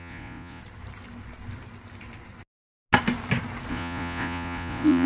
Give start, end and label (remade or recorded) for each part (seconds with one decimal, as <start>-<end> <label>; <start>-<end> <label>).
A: 0.0-0.6 remade; 0.6-3.7 recorded; 3.7-5.1 remade